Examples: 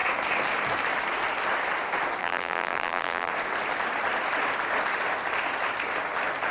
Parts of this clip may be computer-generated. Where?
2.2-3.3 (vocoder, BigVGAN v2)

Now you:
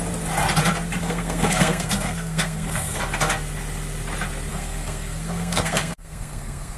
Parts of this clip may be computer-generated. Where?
1.0-3.0 (codec, SNAC); 4.5-6.8

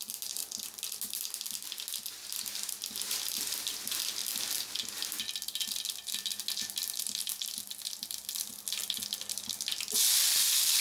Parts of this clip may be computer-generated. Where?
none

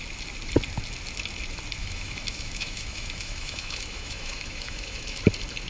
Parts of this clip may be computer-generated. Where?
1.8-5.2 (autoencoder, DAC-VAE)